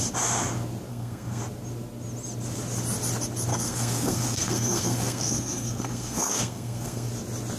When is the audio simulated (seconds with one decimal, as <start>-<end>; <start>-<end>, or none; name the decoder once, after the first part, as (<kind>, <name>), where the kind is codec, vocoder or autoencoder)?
0.9-1.4 (codec, SNAC); 3.5-7.1